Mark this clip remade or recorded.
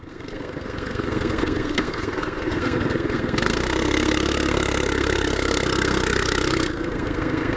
remade